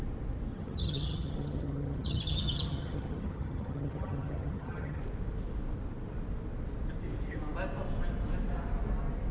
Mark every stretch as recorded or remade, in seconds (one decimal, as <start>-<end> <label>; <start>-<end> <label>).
0.0-0.5 recorded; 0.5-5.0 remade; 5.0-9.3 recorded